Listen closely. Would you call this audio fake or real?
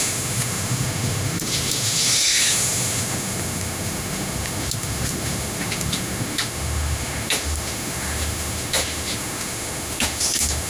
fake